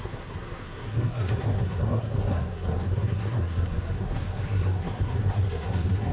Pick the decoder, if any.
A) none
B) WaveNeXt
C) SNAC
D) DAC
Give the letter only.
C